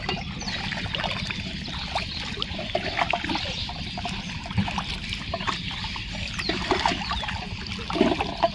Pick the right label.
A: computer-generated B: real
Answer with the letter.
B